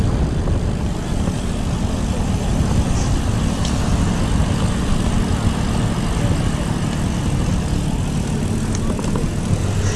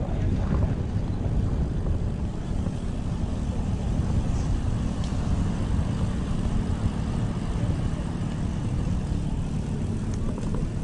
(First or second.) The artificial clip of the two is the second